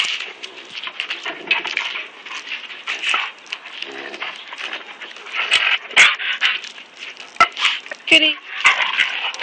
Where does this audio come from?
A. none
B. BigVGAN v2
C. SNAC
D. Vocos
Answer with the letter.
A